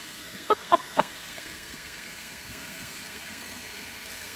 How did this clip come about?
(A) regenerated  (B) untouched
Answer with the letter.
A